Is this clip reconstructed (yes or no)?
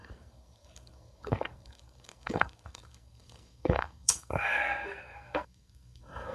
yes